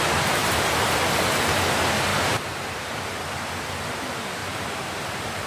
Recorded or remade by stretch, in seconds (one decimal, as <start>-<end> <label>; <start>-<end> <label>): 0.0-0.4 recorded; 0.4-1.0 remade; 1.0-2.1 recorded; 2.1-3.0 remade; 3.0-4.4 recorded; 4.4-5.5 remade

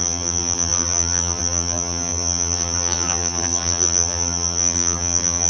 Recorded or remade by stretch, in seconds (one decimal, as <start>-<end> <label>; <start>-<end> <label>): 0.0-5.5 remade

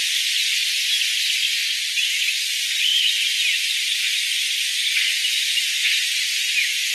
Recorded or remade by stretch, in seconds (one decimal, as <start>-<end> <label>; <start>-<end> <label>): 0.0-6.9 remade

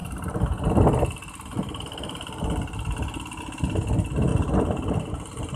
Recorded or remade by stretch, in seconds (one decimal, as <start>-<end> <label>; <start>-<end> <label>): 0.0-4.3 recorded; 4.3-5.1 remade; 5.1-5.6 recorded